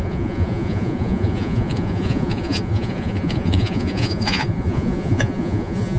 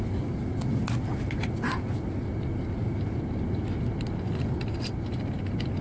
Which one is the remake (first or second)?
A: first